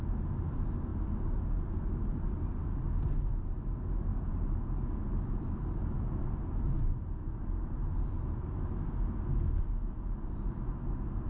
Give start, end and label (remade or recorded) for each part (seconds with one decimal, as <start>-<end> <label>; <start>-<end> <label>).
0.0-0.9 recorded; 0.9-1.4 remade; 1.4-6.2 recorded; 6.2-8.6 remade; 8.6-11.3 recorded